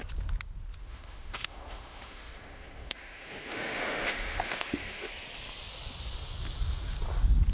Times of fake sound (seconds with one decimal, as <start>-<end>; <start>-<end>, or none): 0.8-5.1